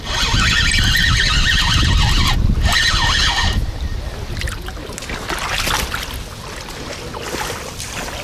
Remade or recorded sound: recorded